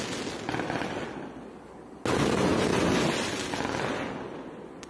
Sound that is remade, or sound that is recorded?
recorded